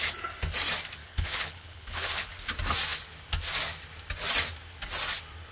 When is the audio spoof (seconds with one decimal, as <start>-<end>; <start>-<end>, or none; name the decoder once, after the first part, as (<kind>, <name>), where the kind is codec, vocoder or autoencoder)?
1.0-2.3 (codec, HILCodec)